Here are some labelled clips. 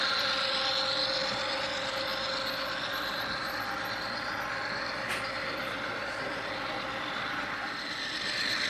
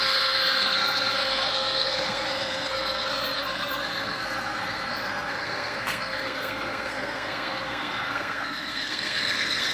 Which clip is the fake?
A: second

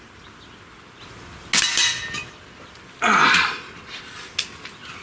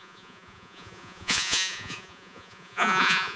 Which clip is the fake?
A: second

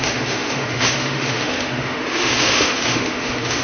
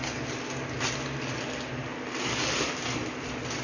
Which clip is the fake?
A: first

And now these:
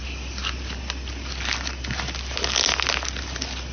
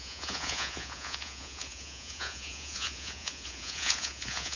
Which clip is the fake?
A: second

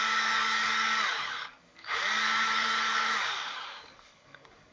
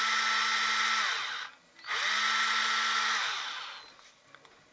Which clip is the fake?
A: first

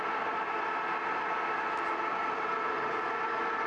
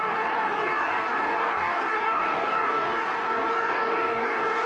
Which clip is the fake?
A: second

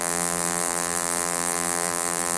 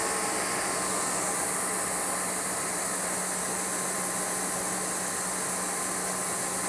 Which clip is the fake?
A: first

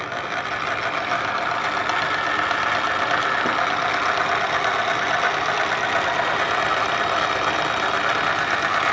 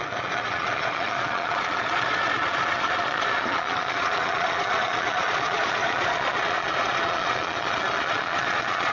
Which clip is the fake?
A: second